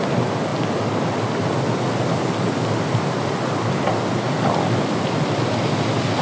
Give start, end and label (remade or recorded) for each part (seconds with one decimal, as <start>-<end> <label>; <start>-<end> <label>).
0.0-6.2 recorded